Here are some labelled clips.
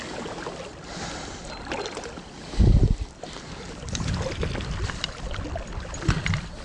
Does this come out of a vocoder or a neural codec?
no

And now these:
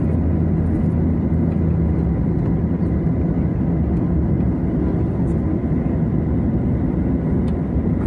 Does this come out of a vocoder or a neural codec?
no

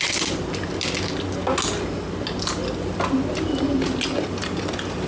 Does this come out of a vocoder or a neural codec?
no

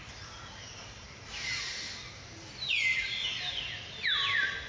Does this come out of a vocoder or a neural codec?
no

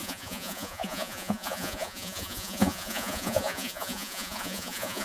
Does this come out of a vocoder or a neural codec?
yes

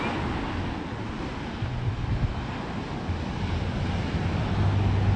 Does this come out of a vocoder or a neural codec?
no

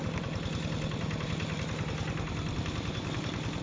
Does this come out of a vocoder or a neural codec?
no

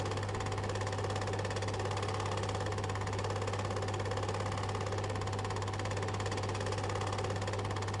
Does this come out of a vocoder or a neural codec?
no